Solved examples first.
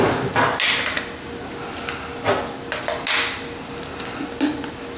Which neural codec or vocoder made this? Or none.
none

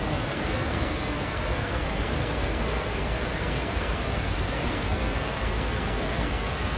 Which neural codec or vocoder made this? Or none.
codec, SNAC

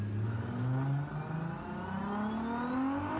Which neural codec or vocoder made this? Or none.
none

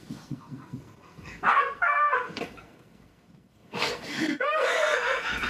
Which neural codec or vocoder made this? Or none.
codec, SNAC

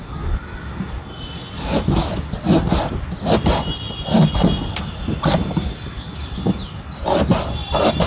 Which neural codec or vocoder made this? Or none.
none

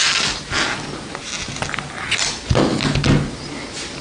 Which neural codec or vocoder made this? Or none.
none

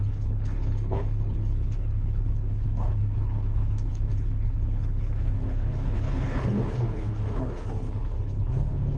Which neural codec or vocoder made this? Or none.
codec, HILCodec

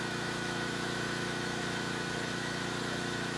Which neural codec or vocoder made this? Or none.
autoencoder, DAC-VAE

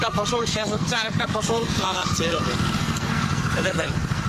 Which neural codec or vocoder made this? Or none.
codec, SNAC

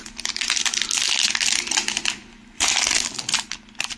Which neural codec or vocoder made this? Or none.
none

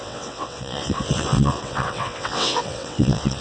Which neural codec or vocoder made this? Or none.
vocoder, WaveNeXt